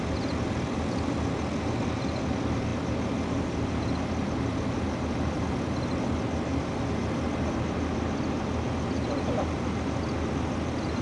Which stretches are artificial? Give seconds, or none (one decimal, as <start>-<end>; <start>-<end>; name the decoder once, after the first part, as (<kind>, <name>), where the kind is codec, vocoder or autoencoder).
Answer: none